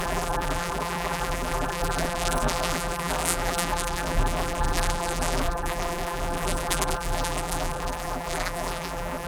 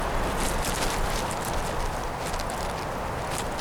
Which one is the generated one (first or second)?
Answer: first